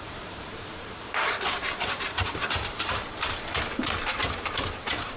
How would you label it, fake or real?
fake